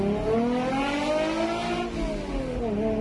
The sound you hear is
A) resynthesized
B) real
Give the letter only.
B